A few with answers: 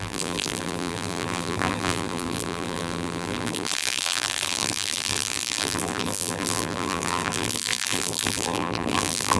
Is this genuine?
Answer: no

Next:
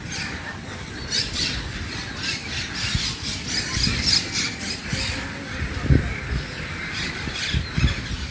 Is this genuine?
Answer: yes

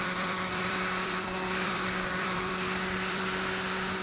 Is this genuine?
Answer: no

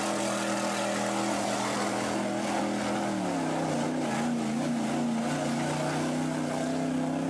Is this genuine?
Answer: yes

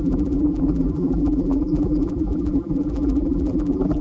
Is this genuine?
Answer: no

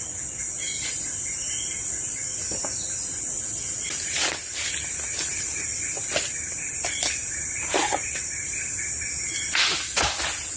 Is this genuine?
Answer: yes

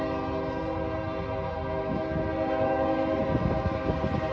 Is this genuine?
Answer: yes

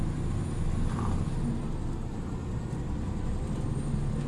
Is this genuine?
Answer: yes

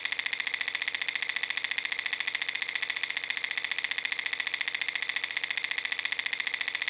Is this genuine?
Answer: yes